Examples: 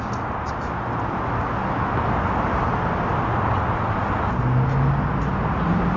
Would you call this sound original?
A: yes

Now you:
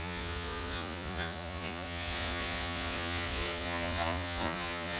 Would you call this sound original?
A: no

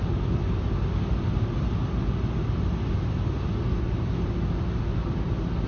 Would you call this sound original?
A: yes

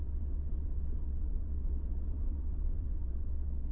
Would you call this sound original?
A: no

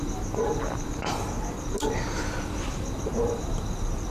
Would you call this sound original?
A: yes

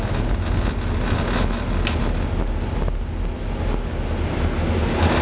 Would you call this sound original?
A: yes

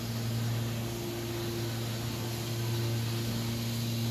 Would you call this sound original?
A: yes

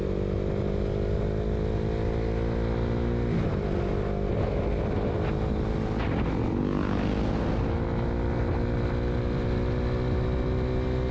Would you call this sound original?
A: yes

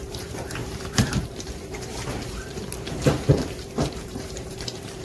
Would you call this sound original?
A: no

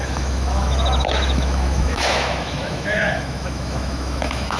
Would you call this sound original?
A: no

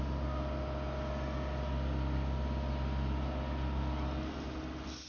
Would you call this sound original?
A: yes